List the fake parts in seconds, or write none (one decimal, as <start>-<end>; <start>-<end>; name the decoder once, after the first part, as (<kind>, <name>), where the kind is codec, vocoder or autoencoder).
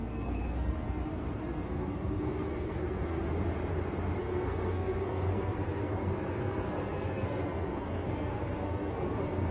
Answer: 0.0-3.2 (codec, SNAC); 4.2-9.5